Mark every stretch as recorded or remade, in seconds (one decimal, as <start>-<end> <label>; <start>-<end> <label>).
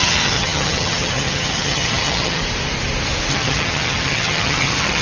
0.0-2.4 remade; 2.4-3.3 recorded; 3.3-5.0 remade